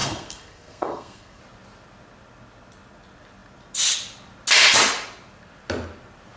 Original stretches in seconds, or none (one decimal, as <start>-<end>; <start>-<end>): 1.4-6.4